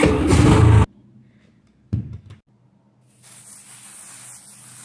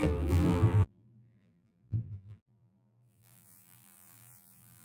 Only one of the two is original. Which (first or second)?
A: first